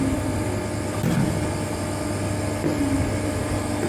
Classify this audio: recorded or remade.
recorded